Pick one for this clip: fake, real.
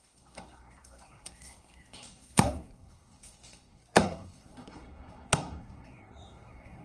fake